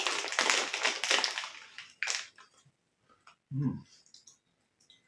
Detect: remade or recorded recorded